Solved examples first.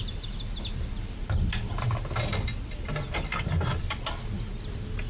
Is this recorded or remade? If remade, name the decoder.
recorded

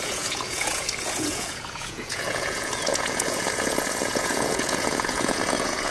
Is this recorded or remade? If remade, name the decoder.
remade, vocoder, Vocos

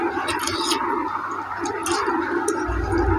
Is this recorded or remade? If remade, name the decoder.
recorded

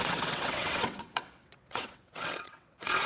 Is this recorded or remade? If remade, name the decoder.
remade, vocoder, WaveNeXt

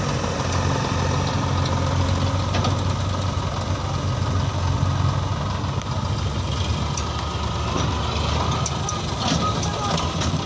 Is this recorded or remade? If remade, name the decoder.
recorded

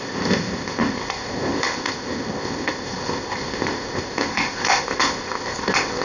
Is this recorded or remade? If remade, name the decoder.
remade, codec, ZipCodec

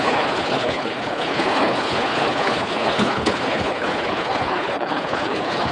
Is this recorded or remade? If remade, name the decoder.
remade, codec, HILCodec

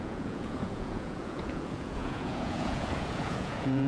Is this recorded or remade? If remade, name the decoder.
remade, vocoder, Vocos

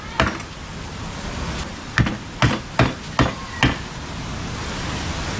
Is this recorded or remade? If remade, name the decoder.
recorded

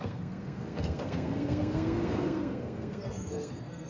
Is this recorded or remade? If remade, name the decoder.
remade, codec, SNAC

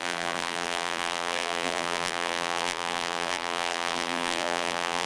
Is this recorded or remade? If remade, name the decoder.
remade, vocoder, BigVGAN v2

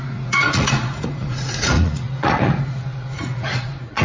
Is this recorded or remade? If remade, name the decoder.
remade, vocoder, Vocos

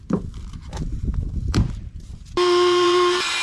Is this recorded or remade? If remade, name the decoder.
remade, vocoder, BigVGAN v2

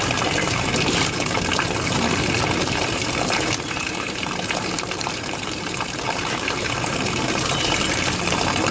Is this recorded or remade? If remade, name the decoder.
remade, vocoder, BigVGAN v2